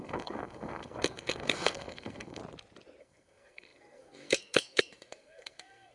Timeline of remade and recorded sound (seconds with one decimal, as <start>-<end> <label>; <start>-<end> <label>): 0.0-2.4 remade; 2.4-3.0 recorded; 3.0-5.9 remade